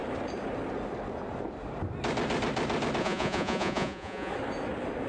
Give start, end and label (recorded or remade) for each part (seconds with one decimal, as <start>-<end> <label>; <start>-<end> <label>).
0.0-3.0 recorded; 3.0-4.3 remade; 4.3-5.1 recorded